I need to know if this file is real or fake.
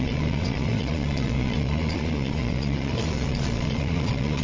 fake